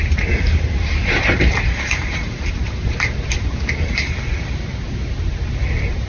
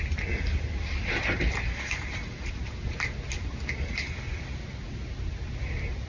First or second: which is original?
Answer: second